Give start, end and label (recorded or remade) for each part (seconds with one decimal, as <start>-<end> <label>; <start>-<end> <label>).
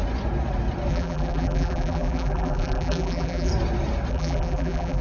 0.0-0.9 recorded; 0.9-3.5 remade; 3.5-4.1 recorded; 4.1-5.0 remade